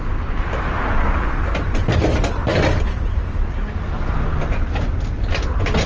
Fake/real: real